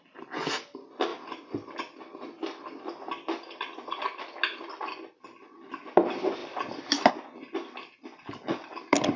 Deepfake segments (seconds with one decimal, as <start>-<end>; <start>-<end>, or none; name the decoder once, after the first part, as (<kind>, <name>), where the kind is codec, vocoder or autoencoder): none